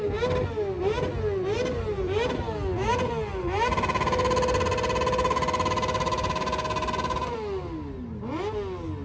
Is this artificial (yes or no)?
no